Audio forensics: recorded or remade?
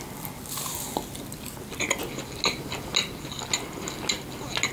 recorded